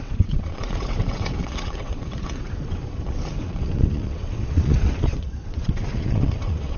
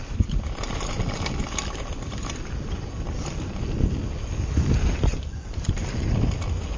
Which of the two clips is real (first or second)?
second